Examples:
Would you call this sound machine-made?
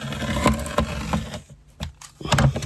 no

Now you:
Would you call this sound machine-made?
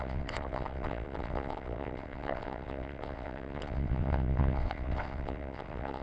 yes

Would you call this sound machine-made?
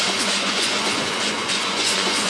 yes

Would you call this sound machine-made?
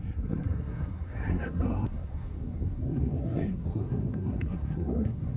yes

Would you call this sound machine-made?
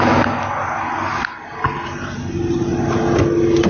no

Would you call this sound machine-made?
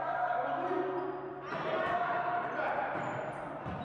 no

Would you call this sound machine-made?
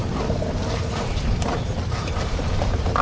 yes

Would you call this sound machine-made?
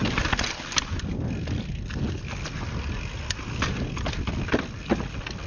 no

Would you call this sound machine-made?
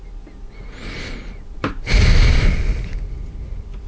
no